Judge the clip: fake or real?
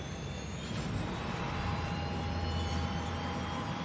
fake